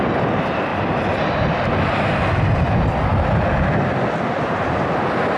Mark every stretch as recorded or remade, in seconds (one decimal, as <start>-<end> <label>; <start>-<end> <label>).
0.0-5.4 recorded